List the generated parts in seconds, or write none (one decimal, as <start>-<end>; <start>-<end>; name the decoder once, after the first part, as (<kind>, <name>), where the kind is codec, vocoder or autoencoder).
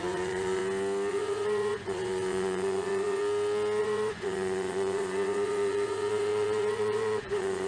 0.0-0.6 (vocoder, Vocos); 1.1-3.2; 3.8-7.7